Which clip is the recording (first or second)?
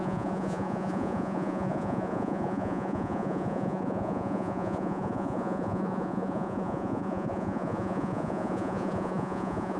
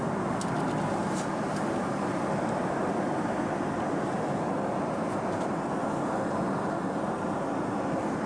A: second